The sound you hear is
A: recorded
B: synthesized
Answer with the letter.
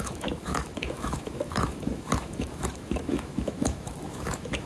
B